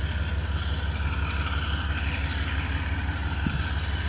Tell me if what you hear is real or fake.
real